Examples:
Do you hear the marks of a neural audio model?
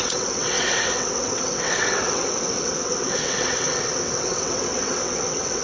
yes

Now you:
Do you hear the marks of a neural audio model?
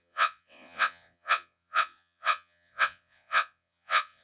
yes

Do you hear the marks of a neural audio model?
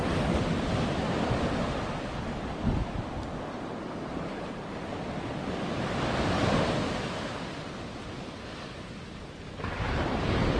no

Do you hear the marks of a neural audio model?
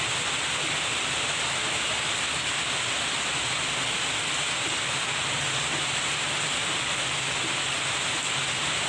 no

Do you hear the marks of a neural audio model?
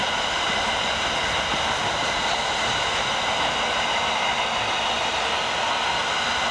no